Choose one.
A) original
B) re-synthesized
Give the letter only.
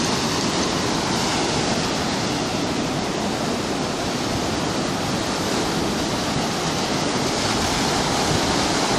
A